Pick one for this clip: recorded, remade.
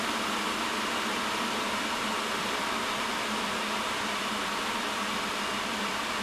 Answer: remade